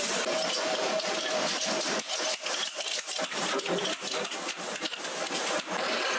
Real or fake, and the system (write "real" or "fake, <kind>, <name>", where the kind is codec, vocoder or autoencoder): fake, vocoder, BigVGAN v2